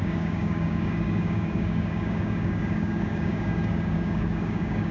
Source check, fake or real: fake